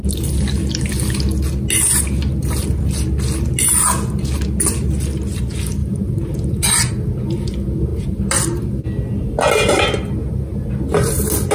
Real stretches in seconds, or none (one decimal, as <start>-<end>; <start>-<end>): 0.0-5.8; 6.9-11.5